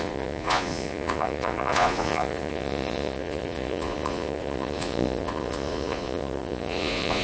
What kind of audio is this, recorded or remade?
remade